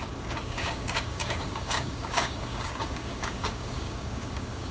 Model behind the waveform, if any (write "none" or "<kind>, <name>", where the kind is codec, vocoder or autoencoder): codec, DAC